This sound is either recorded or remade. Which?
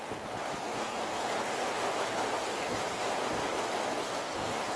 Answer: recorded